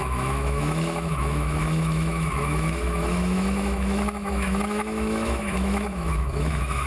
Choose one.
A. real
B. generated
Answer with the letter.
B